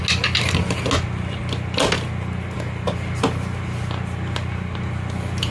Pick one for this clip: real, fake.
real